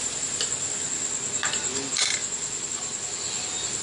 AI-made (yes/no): no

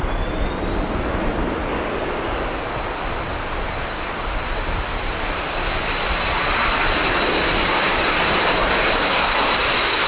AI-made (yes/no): no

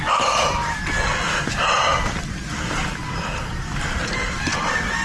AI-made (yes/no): no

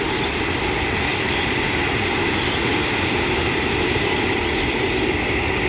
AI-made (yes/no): no